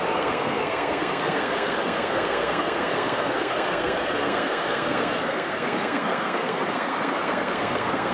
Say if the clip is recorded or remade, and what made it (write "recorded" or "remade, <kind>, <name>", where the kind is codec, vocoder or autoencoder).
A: remade, codec, SNAC